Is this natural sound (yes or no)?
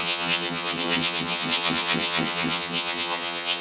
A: no